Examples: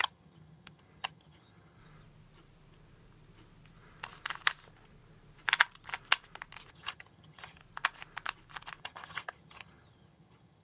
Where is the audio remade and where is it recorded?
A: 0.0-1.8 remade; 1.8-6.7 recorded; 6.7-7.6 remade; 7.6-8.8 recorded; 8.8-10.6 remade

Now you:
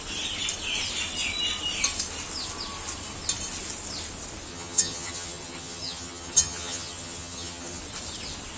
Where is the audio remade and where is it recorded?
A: 0.0-4.5 recorded; 4.5-7.8 remade; 7.8-8.6 recorded

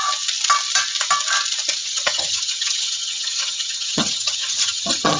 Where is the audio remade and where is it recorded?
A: 0.0-1.8 recorded; 1.8-5.2 remade

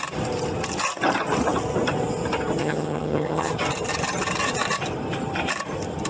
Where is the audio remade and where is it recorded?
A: 0.0-2.6 recorded; 2.6-3.5 remade; 3.5-6.1 recorded